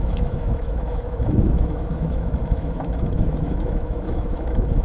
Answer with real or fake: fake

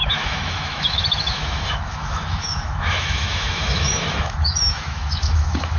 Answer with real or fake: fake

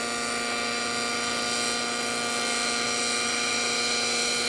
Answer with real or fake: real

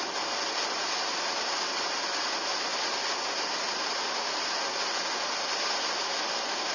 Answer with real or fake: real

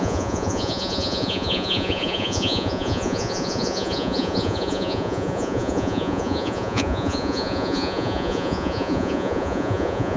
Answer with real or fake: fake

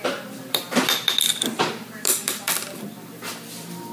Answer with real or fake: fake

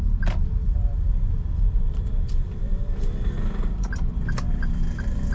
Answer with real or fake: fake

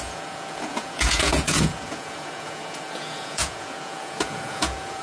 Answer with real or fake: fake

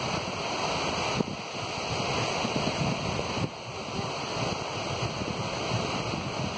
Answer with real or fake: real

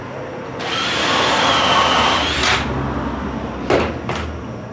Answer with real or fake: real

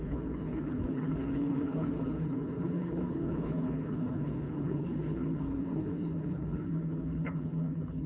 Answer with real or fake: fake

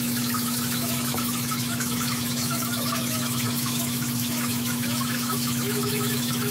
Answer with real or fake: fake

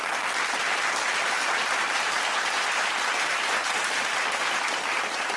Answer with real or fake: real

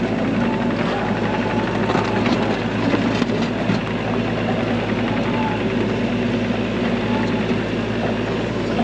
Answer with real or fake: real